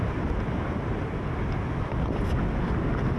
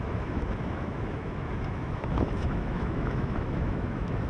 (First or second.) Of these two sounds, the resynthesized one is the second